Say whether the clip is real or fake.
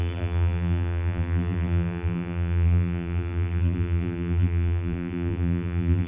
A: fake